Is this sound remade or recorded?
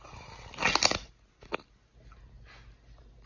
recorded